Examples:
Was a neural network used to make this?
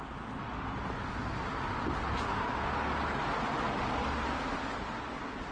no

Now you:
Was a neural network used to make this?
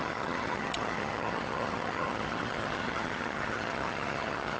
yes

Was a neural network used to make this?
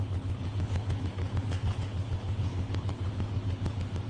yes